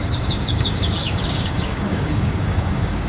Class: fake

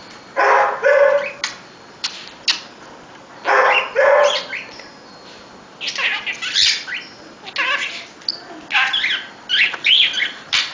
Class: real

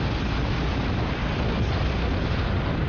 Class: real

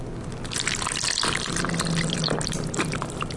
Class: real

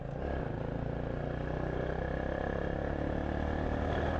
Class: real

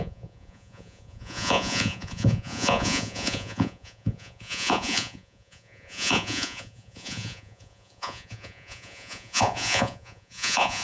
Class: fake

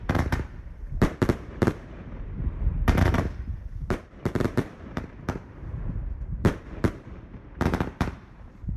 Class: fake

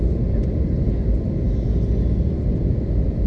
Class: real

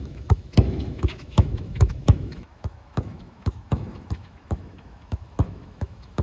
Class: fake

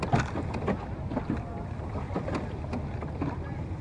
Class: real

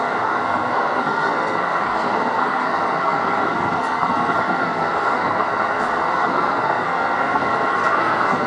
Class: fake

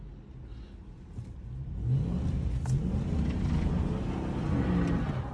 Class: real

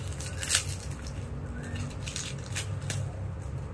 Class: real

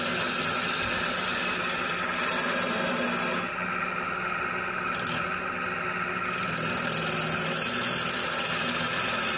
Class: real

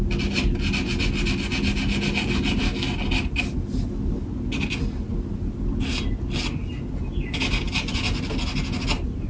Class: real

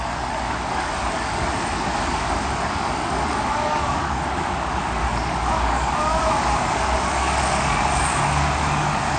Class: fake